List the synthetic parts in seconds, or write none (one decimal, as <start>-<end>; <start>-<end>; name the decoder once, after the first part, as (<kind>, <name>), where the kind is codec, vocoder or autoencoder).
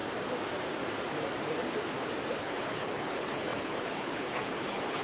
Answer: 2.4-5.0 (codec, HILCodec)